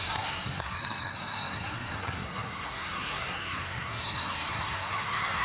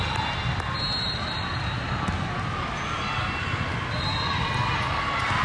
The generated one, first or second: first